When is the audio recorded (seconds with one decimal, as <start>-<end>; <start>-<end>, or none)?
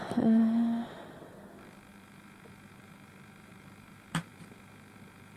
0.0-1.9